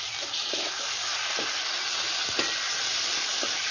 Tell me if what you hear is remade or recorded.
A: recorded